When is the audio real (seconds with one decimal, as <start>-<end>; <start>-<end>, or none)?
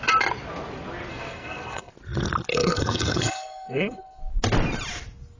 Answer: 0.0-1.1; 1.9-2.5; 4.2-5.4